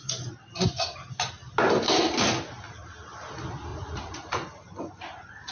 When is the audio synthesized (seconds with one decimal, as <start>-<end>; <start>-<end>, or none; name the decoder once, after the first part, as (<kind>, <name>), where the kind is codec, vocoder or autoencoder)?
3.7-4.3 (vocoder, Vocos)